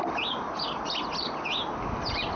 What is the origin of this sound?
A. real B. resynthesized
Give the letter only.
A